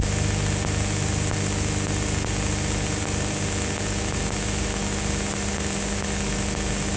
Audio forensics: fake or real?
real